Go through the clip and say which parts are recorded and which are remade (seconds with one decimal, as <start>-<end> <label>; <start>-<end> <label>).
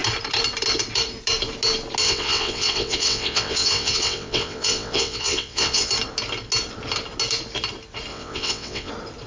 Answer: 0.0-2.0 recorded; 2.0-5.9 remade; 5.9-8.1 recorded; 8.1-8.9 remade; 8.9-9.3 recorded